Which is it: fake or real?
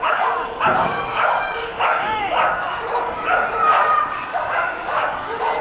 fake